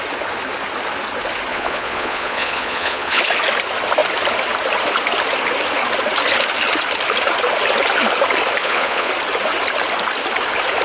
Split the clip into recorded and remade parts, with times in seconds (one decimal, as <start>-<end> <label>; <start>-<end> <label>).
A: 0.0-1.5 recorded; 1.5-3.2 remade; 3.2-8.6 recorded; 8.6-9.1 remade; 9.1-10.8 recorded